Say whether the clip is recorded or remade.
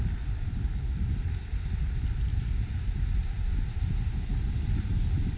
recorded